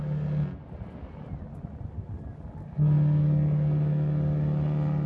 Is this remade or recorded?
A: recorded